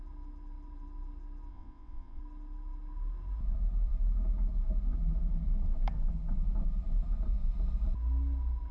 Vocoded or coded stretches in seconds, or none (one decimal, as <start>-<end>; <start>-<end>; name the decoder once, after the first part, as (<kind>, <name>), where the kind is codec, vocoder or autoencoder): 1.5-2.2 (vocoder, WaveNeXt)